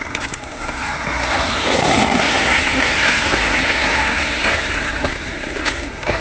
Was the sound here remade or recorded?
remade